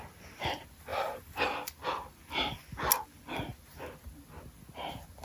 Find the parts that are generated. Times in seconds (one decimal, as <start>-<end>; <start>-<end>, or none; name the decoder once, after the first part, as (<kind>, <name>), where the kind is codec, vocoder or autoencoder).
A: 0.9-1.4 (vocoder, BigVGAN v2)